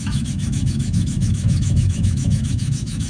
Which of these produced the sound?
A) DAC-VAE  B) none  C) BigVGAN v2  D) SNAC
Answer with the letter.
A